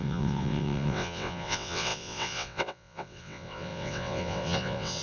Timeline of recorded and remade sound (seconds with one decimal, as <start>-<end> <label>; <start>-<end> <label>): 0.0-5.0 remade